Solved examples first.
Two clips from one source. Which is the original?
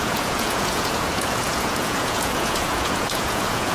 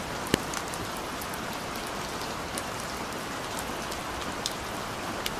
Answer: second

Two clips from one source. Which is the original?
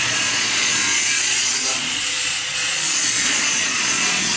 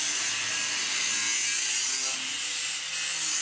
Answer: second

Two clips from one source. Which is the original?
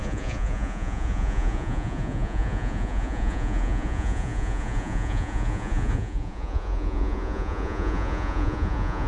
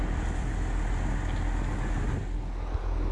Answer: second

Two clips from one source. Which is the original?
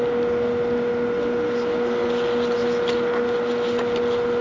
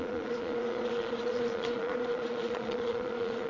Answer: first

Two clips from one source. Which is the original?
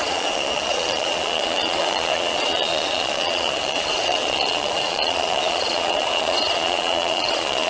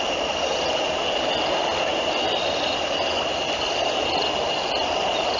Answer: second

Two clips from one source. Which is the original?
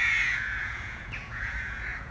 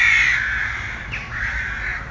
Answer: second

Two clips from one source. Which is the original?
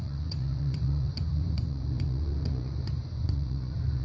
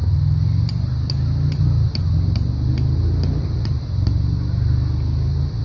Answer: second